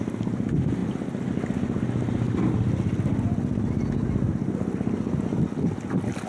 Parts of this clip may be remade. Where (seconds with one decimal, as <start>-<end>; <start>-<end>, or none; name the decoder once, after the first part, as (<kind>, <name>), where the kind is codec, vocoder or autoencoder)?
none